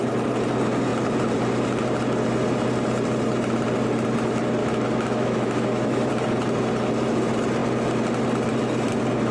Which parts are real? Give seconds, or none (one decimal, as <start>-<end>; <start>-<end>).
0.0-4.6; 6.1-9.3